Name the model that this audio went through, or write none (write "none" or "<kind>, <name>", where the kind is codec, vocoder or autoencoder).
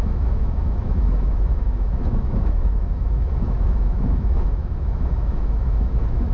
autoencoder, DAC-VAE